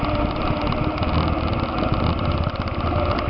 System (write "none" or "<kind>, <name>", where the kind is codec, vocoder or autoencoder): none